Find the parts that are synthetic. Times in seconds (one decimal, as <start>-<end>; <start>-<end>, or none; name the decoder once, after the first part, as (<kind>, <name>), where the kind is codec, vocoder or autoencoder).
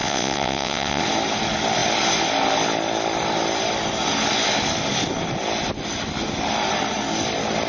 0.0-1.0 (vocoder, WaveNeXt)